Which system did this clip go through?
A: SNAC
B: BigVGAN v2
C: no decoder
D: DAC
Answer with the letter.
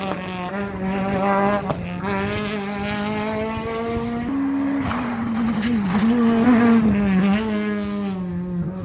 C